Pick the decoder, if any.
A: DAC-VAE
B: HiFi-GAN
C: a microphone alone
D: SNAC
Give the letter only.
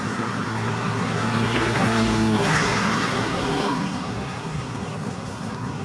D